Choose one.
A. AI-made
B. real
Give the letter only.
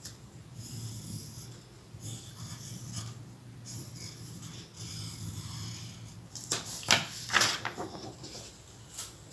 B